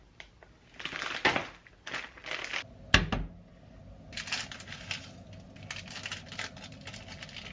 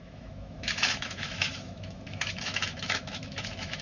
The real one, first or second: first